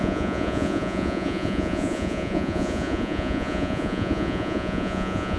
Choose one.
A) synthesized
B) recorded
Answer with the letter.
A